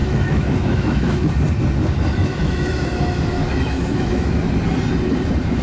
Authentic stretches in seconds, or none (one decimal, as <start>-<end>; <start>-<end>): 1.3-2.2; 4.4-5.6